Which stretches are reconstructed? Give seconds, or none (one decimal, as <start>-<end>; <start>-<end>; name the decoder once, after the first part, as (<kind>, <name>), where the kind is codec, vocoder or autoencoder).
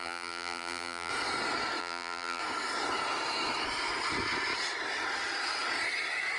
0.0-1.1 (vocoder, BigVGAN v2); 1.8-2.4